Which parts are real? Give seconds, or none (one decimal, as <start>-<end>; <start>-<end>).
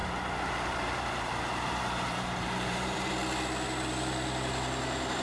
3.1-5.2